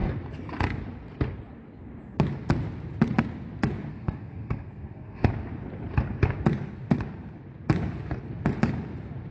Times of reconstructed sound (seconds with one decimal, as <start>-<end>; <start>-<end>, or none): 3.9-5.3